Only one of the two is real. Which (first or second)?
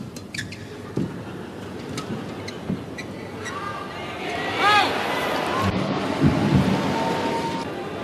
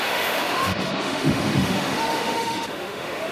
first